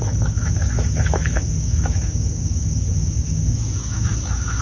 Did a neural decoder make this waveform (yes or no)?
yes